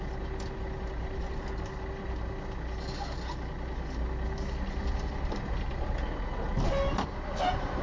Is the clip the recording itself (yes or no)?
yes